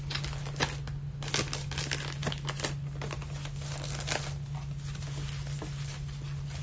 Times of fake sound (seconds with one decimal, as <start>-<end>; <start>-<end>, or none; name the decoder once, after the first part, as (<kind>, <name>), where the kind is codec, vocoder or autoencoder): none